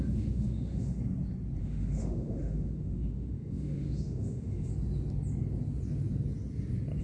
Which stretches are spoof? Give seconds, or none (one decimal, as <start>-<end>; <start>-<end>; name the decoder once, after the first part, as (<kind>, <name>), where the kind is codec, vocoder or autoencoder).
0.0-1.0 (autoencoder, DAC-VAE); 1.6-4.7